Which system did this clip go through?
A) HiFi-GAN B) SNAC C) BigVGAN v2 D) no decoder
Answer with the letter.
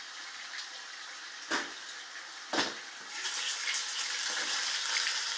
D